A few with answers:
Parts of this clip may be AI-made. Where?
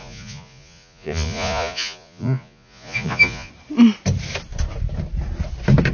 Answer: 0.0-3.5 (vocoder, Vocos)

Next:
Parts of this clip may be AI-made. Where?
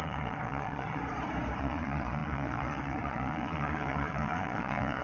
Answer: 0.0-1.0 (vocoder, Vocos); 1.6-5.0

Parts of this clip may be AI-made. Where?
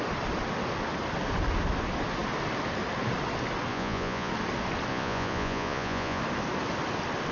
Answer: 3.7-4.3 (vocoder, Vocos); 4.9-6.2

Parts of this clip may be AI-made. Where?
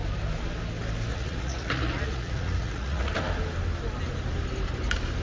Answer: 1.1-3.1 (vocoder, Vocos)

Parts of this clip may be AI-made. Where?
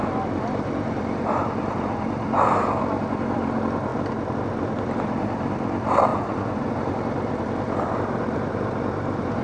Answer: 6.1-6.7 (vocoder, Vocos)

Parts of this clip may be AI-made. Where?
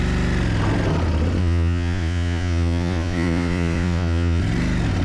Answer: 1.4-4.4 (vocoder, Vocos)